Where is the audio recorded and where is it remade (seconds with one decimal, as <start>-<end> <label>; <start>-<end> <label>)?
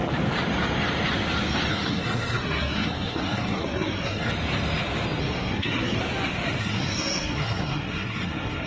0.0-1.7 recorded; 1.7-4.3 remade; 4.3-5.2 recorded; 5.2-6.0 remade; 6.0-6.6 recorded; 6.6-8.7 remade